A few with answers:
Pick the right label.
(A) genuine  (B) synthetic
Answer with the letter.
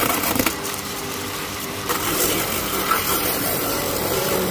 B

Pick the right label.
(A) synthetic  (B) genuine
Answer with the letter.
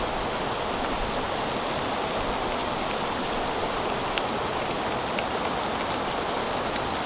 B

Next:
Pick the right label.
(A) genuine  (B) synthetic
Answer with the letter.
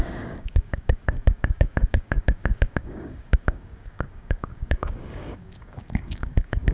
B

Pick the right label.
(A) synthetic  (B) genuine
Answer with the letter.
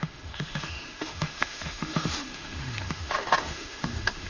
A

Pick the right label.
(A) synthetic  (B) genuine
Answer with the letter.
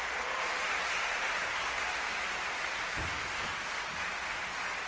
B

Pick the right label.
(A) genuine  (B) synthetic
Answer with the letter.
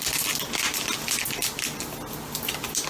A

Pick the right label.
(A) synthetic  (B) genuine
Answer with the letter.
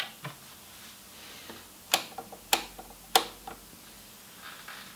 B